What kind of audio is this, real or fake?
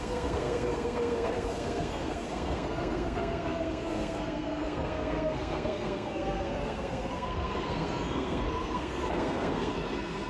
fake